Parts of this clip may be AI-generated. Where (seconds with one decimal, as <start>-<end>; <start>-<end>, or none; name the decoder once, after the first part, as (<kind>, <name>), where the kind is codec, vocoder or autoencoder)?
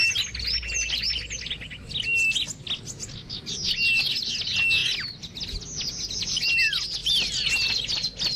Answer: 7.0-7.5 (vocoder, BigVGAN v2)